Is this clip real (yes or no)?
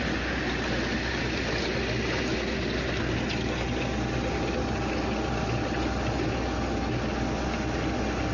yes